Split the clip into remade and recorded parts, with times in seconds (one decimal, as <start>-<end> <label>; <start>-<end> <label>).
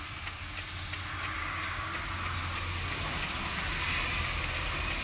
0.0-1.4 recorded; 1.4-2.0 remade; 2.0-5.0 recorded